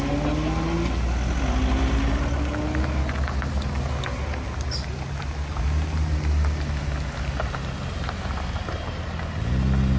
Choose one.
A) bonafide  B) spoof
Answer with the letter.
A